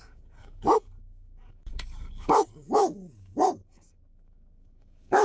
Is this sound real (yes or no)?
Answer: no